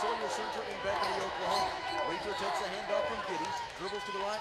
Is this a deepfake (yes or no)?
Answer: yes